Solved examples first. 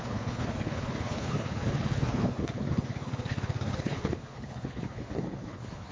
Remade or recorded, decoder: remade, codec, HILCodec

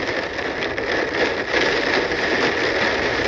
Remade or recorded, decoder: recorded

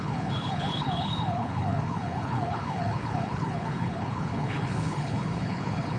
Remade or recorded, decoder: remade, codec, HILCodec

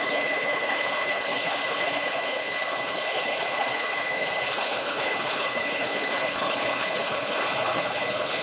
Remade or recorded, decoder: remade, codec, HILCodec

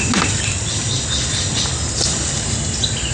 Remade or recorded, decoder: recorded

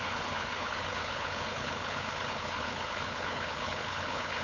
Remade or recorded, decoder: remade, codec, HILCodec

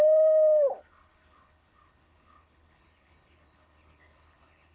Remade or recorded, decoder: remade, codec, HILCodec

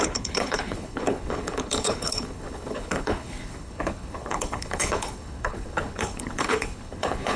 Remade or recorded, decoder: remade, codec, HILCodec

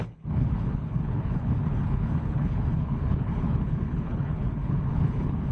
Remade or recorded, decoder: remade, codec, HILCodec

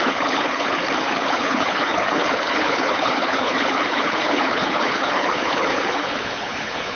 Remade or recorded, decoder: remade, codec, HILCodec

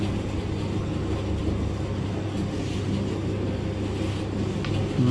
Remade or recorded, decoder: recorded